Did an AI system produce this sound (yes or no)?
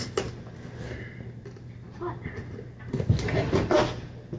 no